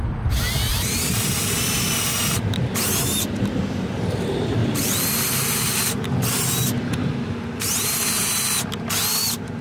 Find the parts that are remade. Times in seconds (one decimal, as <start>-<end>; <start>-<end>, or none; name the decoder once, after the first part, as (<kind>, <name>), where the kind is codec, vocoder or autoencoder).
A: none